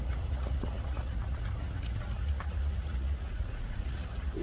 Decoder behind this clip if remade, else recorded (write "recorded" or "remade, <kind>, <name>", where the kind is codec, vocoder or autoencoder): remade, vocoder, Vocos